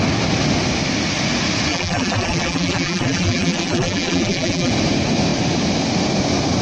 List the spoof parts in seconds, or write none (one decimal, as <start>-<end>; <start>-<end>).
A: 1.7-4.7